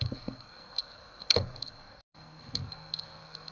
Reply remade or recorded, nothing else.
remade